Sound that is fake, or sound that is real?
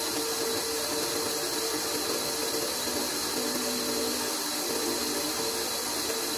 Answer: real